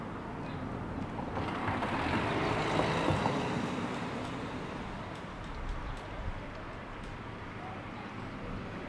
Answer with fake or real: real